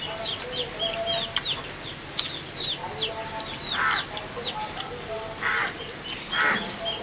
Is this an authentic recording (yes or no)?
yes